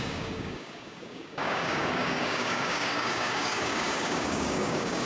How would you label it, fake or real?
fake